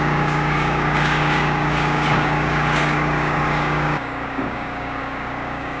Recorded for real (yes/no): no